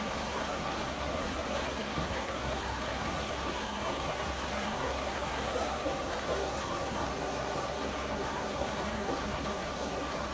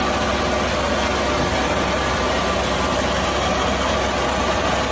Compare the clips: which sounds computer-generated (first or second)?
first